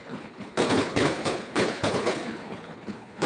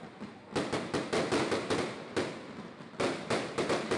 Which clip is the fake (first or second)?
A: first